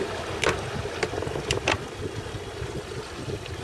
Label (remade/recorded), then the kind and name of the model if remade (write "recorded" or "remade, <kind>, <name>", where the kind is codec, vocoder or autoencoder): recorded